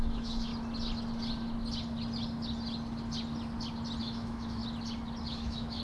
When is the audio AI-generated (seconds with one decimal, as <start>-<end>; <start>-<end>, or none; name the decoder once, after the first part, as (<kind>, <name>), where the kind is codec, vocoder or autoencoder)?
0.0-0.5 (autoencoder, DAC-VAE); 4.0-4.6; 5.3-5.8